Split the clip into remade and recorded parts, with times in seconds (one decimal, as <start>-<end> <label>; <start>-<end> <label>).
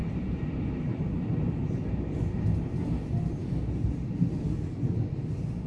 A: 0.0-1.0 remade; 1.0-5.7 recorded